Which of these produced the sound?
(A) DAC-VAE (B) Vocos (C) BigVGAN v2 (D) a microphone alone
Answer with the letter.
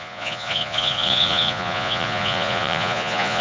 B